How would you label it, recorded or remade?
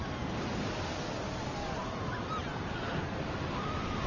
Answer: recorded